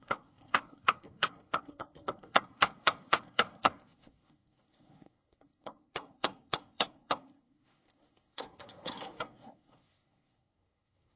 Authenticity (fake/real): fake